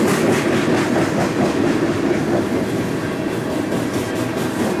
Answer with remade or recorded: recorded